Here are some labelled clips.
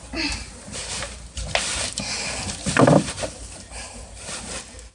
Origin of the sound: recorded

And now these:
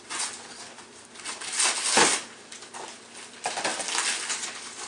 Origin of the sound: recorded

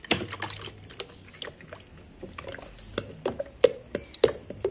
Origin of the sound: recorded